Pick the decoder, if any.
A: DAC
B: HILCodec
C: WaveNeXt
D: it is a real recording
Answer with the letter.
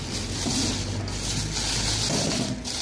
D